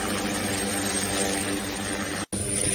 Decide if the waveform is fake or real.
real